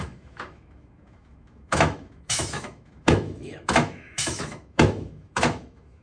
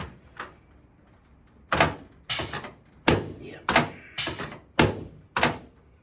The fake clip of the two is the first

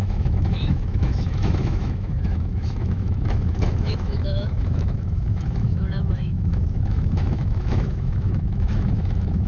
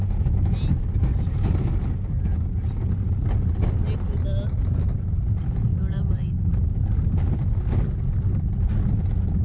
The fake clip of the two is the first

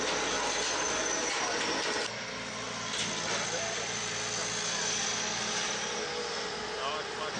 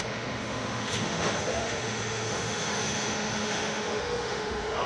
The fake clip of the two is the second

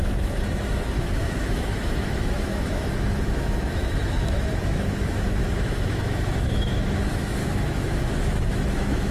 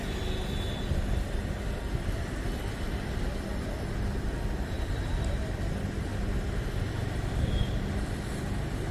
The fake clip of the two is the first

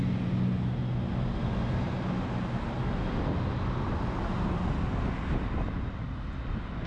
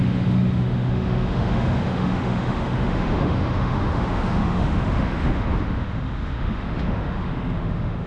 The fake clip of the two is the second